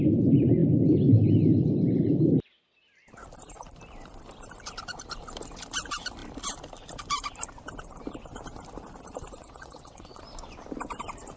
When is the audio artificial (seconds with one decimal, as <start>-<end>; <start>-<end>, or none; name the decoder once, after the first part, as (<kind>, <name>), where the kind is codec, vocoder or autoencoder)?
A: 9.4-10.2 (vocoder, WaveNeXt)